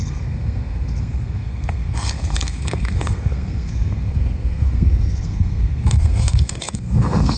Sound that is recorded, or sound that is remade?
remade